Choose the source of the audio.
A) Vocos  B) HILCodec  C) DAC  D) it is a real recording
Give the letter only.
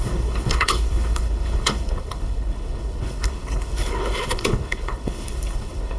B